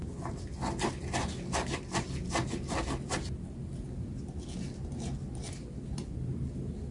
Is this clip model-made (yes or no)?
no